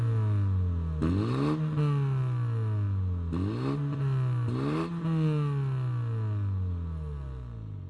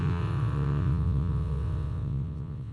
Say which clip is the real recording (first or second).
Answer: first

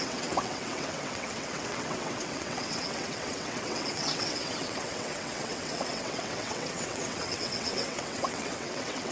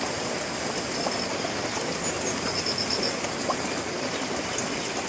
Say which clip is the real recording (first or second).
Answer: second